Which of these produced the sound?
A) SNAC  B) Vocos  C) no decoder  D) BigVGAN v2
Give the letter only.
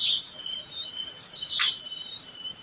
D